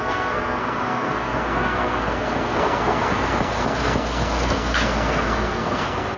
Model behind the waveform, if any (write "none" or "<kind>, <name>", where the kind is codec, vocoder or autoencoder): codec, SNAC